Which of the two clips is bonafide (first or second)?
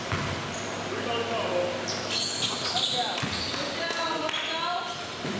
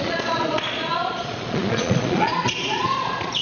first